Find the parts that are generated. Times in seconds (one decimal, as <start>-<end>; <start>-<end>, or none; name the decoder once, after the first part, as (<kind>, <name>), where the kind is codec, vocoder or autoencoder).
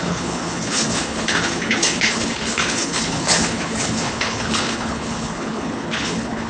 0.0-6.5 (codec, HILCodec)